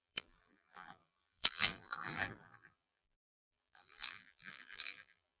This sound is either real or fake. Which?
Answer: fake